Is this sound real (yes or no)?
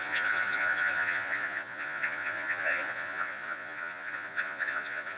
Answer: no